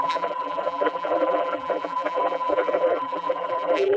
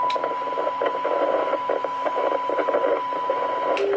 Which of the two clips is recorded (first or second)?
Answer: second